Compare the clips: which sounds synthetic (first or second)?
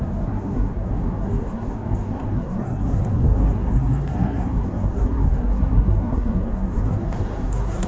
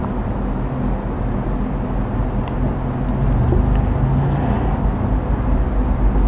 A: first